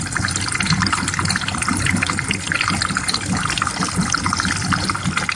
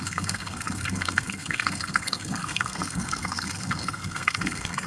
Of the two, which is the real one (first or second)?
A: first